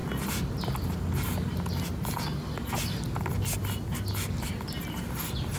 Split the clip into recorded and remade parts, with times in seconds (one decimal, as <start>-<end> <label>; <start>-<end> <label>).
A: 0.0-5.6 recorded

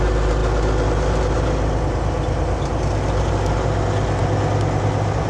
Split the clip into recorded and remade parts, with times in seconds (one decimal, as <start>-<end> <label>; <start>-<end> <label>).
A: 0.0-5.3 recorded

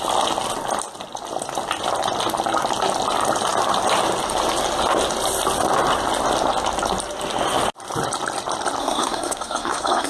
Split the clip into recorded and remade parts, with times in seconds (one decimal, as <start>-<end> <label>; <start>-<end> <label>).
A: 0.0-8.8 recorded; 8.8-10.1 remade

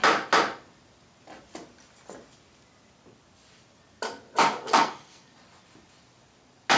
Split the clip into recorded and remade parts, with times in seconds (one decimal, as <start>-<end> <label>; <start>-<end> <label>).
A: 0.0-4.6 recorded; 4.6-5.3 remade; 5.3-6.8 recorded

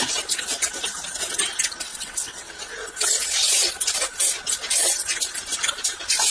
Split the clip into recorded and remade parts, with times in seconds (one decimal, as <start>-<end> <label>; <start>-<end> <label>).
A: 0.0-1.9 recorded; 1.9-2.5 remade; 2.5-6.3 recorded

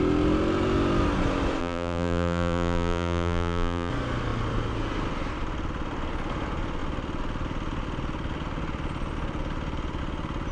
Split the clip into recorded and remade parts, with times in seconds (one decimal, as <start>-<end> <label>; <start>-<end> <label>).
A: 0.0-1.6 recorded; 1.6-3.9 remade; 3.9-10.5 recorded

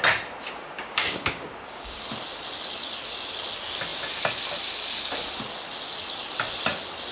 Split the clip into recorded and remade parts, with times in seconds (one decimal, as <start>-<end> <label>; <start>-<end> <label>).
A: 0.0-0.6 recorded; 0.6-2.0 remade; 2.0-7.1 recorded